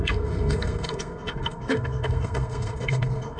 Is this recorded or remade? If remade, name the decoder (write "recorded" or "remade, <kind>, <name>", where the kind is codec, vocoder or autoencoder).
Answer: remade, codec, SNAC